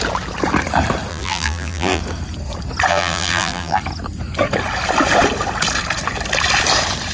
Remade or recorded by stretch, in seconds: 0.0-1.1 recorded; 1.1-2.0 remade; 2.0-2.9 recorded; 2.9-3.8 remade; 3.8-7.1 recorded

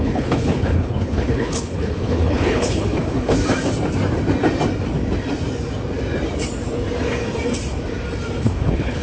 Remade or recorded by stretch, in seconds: 0.0-3.4 remade; 3.4-8.4 recorded; 8.4-9.0 remade

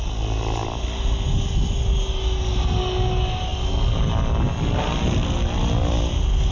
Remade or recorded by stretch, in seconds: 0.0-6.5 recorded

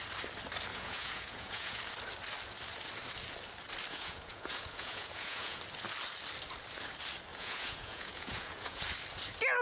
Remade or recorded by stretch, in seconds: 0.0-0.7 recorded; 0.7-1.8 remade; 1.8-3.9 recorded; 3.9-5.6 remade; 5.6-7.3 recorded; 7.3-8.8 remade; 8.8-9.6 recorded

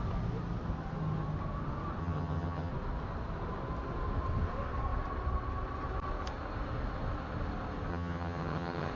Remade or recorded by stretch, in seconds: 0.0-2.0 recorded; 2.0-2.7 remade; 2.7-7.9 recorded; 7.9-8.9 remade

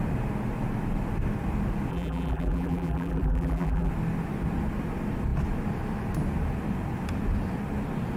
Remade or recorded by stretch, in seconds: 0.0-1.9 recorded; 1.9-3.9 remade; 3.9-8.2 recorded